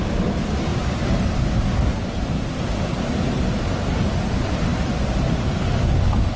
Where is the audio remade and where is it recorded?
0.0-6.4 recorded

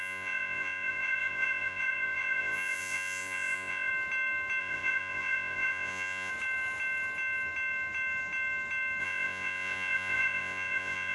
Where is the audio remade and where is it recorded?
0.0-3.9 remade; 3.9-4.6 recorded; 4.6-6.3 remade; 6.3-9.0 recorded; 9.0-11.1 remade

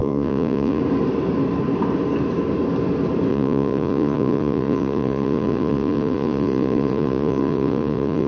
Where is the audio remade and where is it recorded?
0.0-0.8 remade; 0.8-3.3 recorded; 3.3-8.3 remade

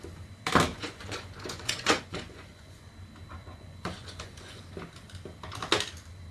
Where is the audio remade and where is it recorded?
0.0-0.7 recorded; 0.7-2.9 remade; 2.9-3.4 recorded; 3.4-4.6 remade; 4.6-6.3 recorded

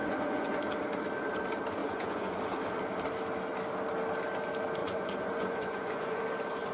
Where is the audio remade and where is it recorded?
0.0-0.6 remade; 0.6-1.8 recorded; 1.8-2.4 remade; 2.4-4.8 recorded; 4.8-6.2 remade; 6.2-6.7 recorded

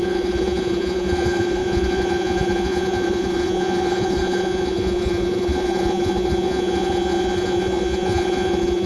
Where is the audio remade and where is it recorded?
0.0-8.9 remade